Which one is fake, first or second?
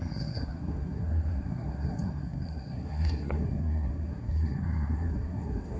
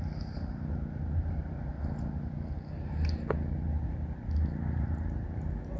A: first